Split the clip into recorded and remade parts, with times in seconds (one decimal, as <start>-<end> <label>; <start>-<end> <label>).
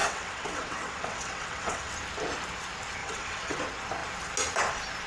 0.0-1.9 remade; 1.9-3.0 recorded; 3.0-3.6 remade; 3.6-5.1 recorded